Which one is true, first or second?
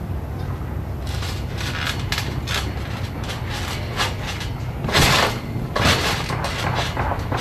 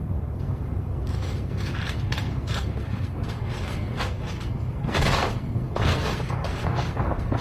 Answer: first